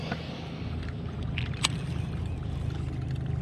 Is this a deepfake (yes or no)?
no